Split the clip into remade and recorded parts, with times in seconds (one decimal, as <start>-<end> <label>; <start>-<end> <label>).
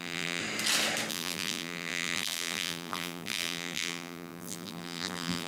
0.0-0.4 remade; 0.4-1.1 recorded; 1.1-5.5 remade